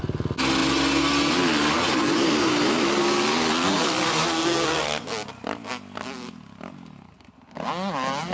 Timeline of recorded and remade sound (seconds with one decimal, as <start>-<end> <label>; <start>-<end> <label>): 0.0-8.3 recorded